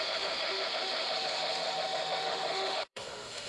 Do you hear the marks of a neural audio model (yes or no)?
yes